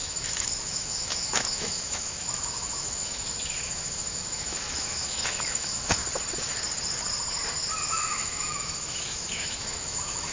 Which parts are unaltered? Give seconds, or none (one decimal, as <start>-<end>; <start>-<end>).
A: 6.0-7.8

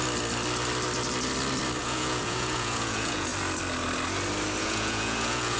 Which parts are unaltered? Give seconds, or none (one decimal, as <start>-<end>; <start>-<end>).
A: 0.0-1.8; 3.3-4.6

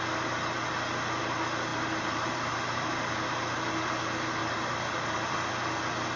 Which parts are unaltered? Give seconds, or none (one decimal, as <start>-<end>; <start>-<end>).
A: 0.0-1.7; 3.1-4.4; 5.5-6.2